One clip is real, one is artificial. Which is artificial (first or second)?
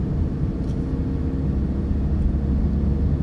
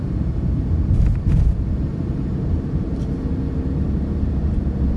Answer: second